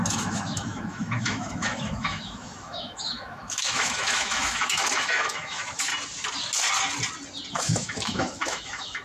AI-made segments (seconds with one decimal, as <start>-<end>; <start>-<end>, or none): 0.0-5.9; 7.5-9.0